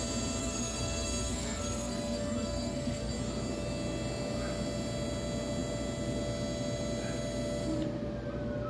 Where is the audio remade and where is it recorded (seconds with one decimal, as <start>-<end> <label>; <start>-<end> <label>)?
0.0-0.4 recorded; 0.4-3.1 remade; 3.1-8.7 recorded

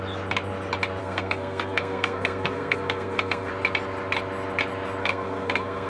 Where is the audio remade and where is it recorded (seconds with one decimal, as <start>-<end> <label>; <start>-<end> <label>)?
0.0-1.0 recorded; 1.0-3.5 remade; 3.5-5.0 recorded; 5.0-5.9 remade

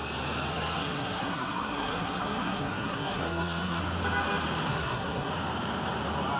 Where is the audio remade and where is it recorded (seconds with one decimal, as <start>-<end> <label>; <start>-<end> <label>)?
0.0-0.5 recorded; 0.5-3.8 remade; 3.8-4.7 recorded; 4.7-5.3 remade; 5.3-6.4 recorded

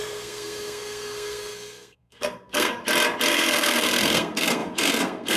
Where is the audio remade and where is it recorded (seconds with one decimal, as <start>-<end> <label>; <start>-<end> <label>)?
0.0-2.8 remade; 2.8-3.3 recorded; 3.3-5.4 remade